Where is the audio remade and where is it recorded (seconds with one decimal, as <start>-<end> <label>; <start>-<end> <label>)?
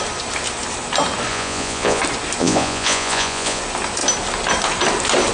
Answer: 0.0-1.3 recorded; 1.3-2.0 remade; 2.0-2.4 recorded; 2.4-3.6 remade; 3.6-5.3 recorded